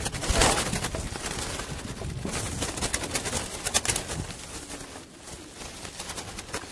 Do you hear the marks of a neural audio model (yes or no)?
no